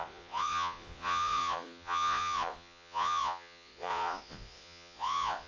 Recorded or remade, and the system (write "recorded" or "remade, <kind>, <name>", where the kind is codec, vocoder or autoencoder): remade, vocoder, Vocos